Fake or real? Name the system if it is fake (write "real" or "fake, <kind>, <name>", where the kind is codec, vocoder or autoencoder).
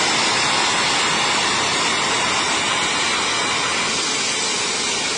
real